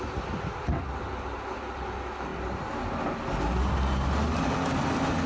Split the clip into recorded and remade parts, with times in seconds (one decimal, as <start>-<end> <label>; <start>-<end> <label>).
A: 0.0-5.3 recorded